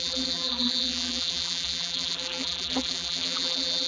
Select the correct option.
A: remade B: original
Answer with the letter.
A